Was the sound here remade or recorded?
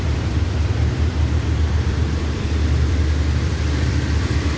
remade